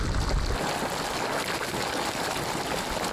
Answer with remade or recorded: recorded